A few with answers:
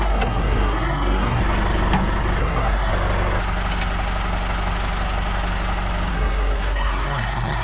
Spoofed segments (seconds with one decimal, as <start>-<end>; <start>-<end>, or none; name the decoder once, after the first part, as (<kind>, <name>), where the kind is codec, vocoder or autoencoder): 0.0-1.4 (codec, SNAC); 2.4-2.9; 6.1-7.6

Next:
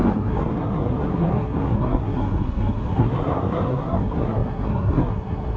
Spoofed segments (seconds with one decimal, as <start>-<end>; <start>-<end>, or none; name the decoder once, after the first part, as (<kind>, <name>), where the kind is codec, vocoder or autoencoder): 0.0-5.6 (codec, SNAC)

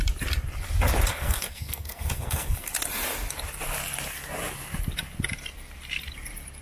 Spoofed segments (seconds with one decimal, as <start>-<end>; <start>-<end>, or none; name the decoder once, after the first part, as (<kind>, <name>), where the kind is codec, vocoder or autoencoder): 1.1-2.7 (codec, SNAC)

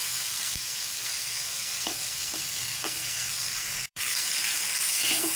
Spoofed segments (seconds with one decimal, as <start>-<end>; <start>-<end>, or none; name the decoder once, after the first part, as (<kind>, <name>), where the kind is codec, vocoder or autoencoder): 0.0-5.4 (codec, SNAC)